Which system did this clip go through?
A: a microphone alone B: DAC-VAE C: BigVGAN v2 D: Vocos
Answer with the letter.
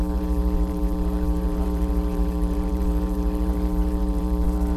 C